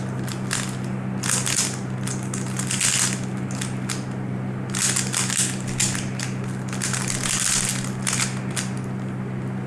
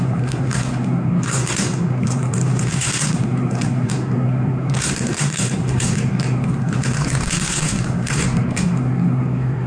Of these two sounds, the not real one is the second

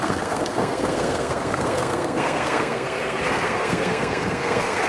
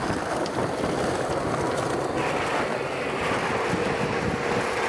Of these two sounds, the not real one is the first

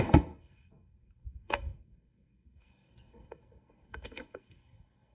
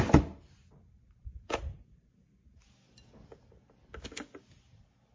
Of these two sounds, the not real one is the first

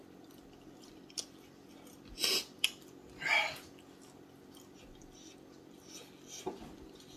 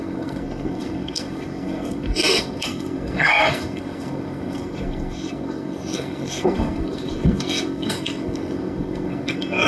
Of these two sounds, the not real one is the second